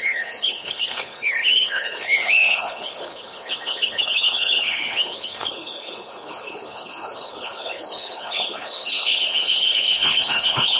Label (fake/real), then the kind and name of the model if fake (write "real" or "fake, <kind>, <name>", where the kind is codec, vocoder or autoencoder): fake, codec, HILCodec